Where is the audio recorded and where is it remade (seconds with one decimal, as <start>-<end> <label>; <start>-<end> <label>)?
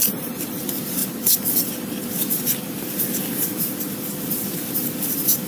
0.0-5.5 recorded